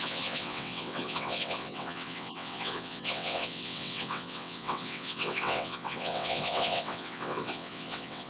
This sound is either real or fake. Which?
fake